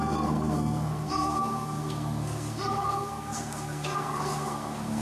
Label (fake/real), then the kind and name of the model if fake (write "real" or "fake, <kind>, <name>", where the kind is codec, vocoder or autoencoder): fake, codec, SNAC